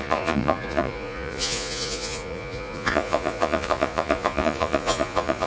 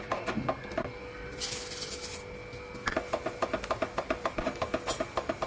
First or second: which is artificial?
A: first